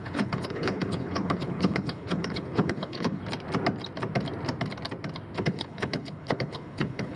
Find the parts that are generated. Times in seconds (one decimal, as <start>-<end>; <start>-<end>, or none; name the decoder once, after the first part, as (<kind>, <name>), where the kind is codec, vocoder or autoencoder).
0.0-3.2 (codec, HILCodec); 5.4-7.2

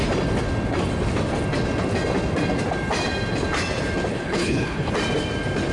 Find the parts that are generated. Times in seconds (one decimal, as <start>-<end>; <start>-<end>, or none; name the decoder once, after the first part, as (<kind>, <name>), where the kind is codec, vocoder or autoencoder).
4.1-4.9 (codec, HILCodec)

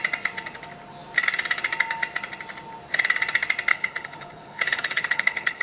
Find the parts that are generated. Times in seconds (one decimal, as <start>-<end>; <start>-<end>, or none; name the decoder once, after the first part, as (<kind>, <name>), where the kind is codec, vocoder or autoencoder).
3.7-5.6 (codec, HILCodec)

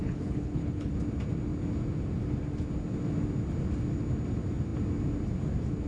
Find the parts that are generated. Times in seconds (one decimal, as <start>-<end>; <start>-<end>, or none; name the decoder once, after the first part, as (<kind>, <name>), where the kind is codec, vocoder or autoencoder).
0.0-0.9 (codec, HILCodec)

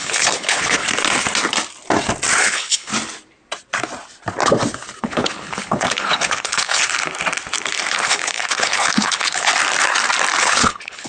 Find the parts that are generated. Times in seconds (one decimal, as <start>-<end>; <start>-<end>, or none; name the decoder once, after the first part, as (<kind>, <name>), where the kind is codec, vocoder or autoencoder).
0.0-0.8 (codec, HILCodec); 2.4-2.9; 5.0-6.8; 7.9-9.5; 10.4-11.1

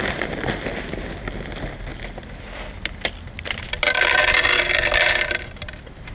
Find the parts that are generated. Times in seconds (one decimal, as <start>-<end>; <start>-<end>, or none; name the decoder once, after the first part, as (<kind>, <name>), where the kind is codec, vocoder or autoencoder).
none